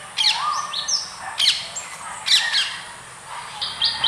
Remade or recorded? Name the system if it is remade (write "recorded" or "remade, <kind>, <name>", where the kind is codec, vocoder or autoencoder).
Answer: recorded